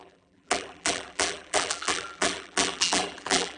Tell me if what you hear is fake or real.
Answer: fake